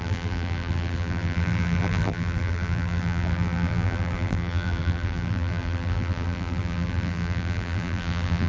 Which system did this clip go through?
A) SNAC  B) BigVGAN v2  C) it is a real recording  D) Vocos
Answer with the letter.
B